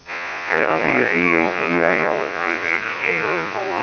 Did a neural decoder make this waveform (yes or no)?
yes